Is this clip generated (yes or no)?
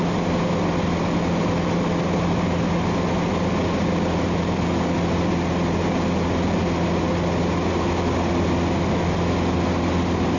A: no